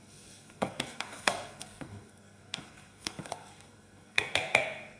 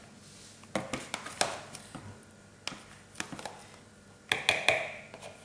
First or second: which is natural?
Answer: second